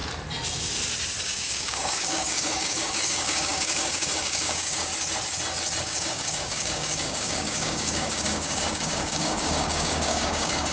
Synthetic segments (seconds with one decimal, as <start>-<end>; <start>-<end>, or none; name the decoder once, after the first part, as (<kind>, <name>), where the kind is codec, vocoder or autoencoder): 1.2-4.9 (codec, DAC); 5.8-10.7